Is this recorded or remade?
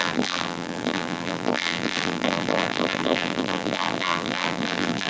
remade